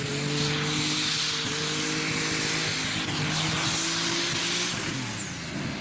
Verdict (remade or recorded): recorded